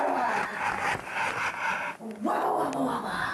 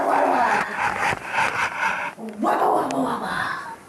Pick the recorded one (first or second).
first